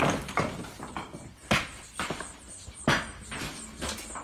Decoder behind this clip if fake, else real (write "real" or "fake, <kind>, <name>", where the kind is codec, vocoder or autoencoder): fake, vocoder, BigVGAN v2